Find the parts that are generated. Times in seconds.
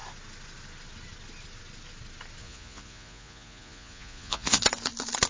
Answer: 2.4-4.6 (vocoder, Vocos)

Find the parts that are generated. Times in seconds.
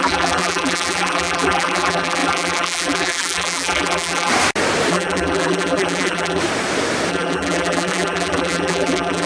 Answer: 0.0-4.3 (vocoder, BigVGAN v2); 4.9-6.4; 7.1-9.3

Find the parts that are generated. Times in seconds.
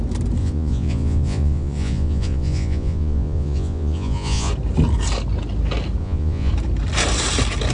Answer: 0.4-4.5 (vocoder, Vocos); 6.0-6.5